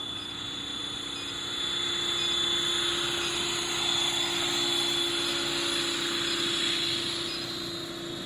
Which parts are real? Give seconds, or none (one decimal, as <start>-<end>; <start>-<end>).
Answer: 0.0-8.3